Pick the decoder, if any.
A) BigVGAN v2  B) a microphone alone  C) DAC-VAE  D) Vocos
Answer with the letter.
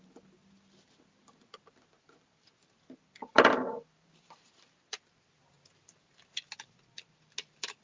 B